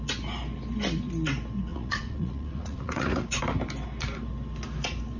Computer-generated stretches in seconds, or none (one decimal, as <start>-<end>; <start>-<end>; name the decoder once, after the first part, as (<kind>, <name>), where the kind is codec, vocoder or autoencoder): 1.7-3.4 (vocoder, Vocos)